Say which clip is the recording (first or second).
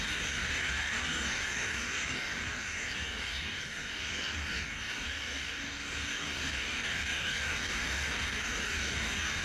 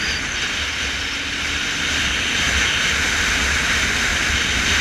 second